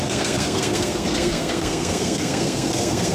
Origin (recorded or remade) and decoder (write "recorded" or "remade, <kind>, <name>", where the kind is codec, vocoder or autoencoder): remade, codec, SNAC